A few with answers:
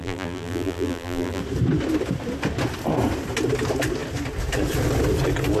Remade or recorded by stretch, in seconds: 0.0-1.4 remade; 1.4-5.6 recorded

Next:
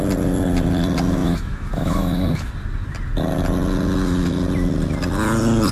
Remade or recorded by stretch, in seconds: 0.0-1.2 recorded; 1.2-2.5 remade; 2.5-5.7 recorded

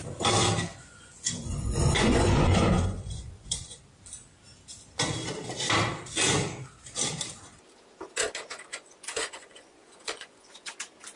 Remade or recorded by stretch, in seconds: 0.0-0.7 recorded; 0.7-3.8 remade; 3.8-8.7 recorded; 8.7-10.7 remade; 10.7-11.2 recorded

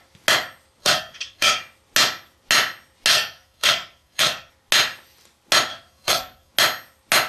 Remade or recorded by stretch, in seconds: 0.0-0.8 recorded; 0.8-1.6 remade; 1.6-3.1 recorded; 3.1-4.5 remade; 4.5-5.7 recorded; 5.7-6.5 remade; 6.5-7.3 recorded

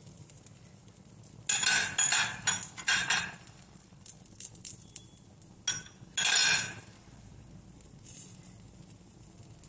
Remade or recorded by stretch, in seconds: 0.0-2.9 recorded; 2.9-5.3 remade; 5.3-9.7 recorded

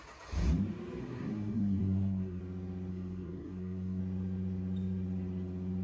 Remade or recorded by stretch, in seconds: 0.0-1.0 recorded; 1.0-2.4 remade; 2.4-2.9 recorded; 2.9-4.0 remade; 4.0-5.8 recorded

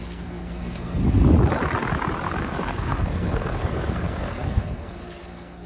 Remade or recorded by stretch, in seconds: 0.0-1.0 remade; 1.0-2.4 recorded; 2.4-5.7 remade

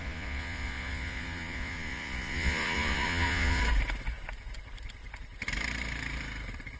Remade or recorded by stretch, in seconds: 0.0-3.6 remade; 3.6-6.8 recorded